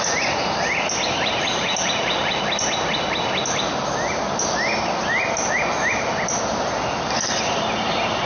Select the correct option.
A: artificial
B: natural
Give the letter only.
B